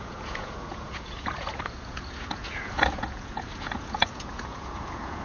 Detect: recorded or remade remade